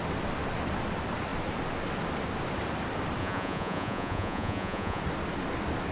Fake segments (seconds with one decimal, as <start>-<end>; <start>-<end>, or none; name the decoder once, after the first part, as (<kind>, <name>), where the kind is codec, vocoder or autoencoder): 3.2-5.0 (vocoder, Vocos)